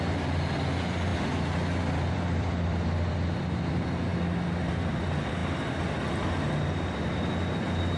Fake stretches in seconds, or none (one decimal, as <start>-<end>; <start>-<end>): 1.1-3.4